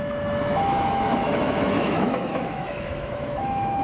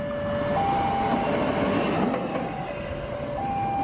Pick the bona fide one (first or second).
second